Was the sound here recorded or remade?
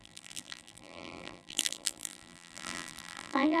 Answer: remade